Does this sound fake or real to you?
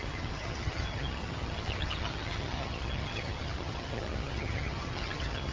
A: fake